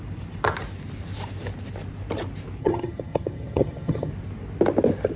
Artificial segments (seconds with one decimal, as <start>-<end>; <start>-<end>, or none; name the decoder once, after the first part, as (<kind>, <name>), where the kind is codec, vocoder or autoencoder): 2.6-4.1 (vocoder, HiFi-GAN)